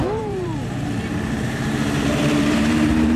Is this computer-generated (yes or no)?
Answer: yes